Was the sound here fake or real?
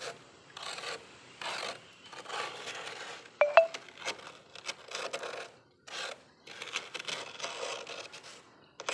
real